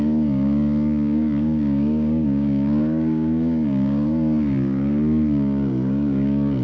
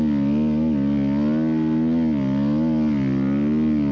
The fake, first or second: first